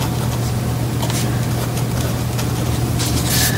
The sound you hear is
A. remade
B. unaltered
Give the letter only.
B